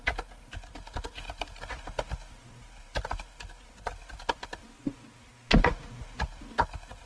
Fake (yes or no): no